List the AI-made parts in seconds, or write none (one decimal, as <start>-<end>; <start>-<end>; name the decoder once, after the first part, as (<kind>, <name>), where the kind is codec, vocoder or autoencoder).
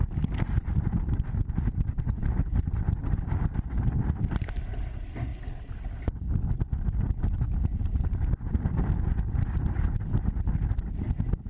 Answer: none